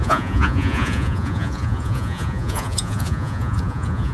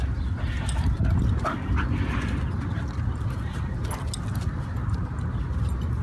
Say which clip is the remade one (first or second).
first